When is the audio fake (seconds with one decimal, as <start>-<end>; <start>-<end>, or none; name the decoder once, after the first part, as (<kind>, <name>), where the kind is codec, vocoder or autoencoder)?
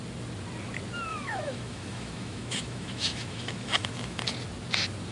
1.1-4.2 (autoencoder, DAC-VAE)